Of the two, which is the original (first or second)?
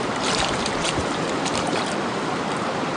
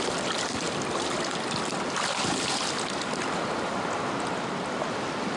second